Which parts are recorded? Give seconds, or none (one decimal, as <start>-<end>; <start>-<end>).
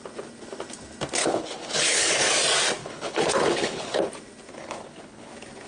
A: 0.0-1.2; 2.2-2.8; 4.1-4.5; 5.3-5.7